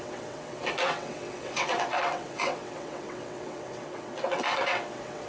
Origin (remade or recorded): remade